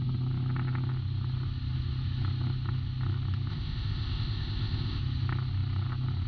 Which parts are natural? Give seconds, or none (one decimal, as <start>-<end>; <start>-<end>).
0.0-3.5; 5.0-6.3